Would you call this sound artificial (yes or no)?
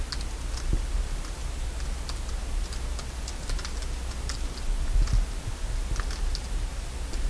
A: no